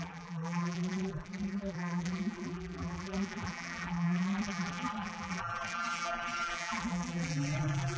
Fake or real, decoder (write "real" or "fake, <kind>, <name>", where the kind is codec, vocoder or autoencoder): fake, vocoder, BigVGAN v2